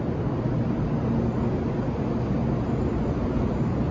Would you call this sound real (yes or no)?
yes